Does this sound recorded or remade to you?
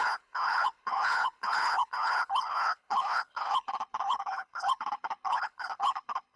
remade